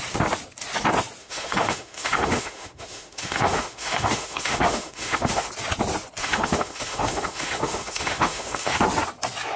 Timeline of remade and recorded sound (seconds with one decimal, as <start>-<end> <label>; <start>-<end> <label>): 0.0-1.2 recorded; 1.2-5.5 remade; 5.5-6.2 recorded; 6.2-8.8 remade; 8.8-9.6 recorded